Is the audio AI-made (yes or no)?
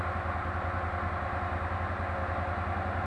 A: no